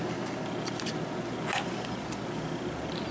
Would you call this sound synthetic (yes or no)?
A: no